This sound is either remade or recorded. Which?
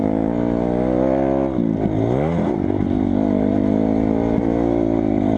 recorded